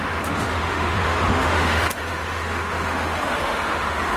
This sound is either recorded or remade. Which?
remade